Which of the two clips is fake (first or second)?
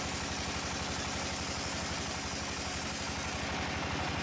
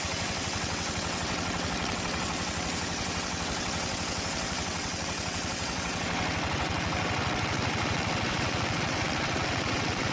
second